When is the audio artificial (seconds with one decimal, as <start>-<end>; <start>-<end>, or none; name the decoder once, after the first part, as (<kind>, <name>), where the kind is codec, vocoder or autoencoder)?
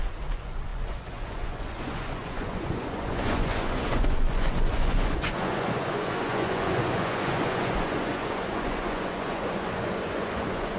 0.0-10.8 (vocoder, Vocos)